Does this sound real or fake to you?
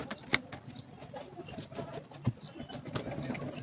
real